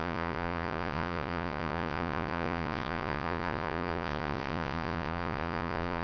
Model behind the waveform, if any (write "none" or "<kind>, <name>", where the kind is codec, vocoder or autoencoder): vocoder, Vocos